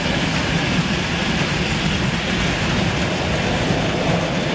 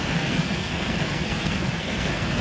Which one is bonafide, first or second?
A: first